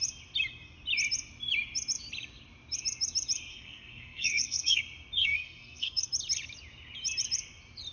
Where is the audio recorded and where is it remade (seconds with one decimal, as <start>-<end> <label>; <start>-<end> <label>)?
0.0-3.5 recorded; 3.5-4.8 remade; 4.8-5.2 recorded; 5.2-6.1 remade; 6.1-7.9 recorded